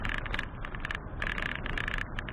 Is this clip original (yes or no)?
no